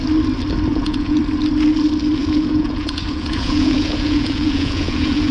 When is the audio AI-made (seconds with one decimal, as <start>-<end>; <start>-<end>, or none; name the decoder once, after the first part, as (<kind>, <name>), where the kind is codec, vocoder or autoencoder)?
0.7-1.2 (vocoder, Vocos); 2.2-5.3